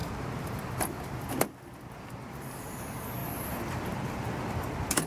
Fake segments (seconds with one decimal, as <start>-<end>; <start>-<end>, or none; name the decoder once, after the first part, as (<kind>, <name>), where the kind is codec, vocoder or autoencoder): none